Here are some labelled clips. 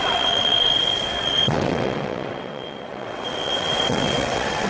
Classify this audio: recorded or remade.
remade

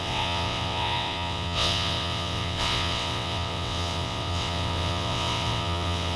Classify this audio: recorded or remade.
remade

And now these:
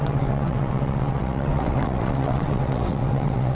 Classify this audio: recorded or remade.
remade